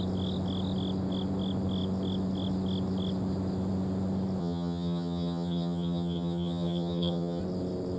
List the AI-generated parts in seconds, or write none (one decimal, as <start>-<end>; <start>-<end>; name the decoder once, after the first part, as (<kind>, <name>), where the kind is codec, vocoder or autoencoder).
4.4-7.4 (vocoder, HiFi-GAN)